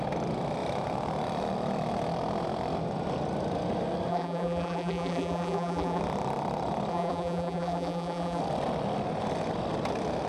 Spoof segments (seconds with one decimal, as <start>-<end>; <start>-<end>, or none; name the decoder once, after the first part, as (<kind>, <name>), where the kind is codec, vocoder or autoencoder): 4.1-6.0 (vocoder, BigVGAN v2); 6.9-8.4